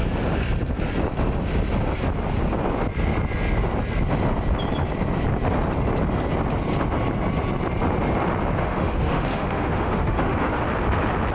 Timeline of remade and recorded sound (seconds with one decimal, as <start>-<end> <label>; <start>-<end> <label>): 0.0-8.6 recorded; 8.6-10.6 remade; 10.6-11.3 recorded